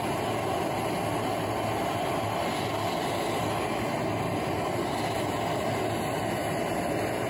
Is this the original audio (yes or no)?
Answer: yes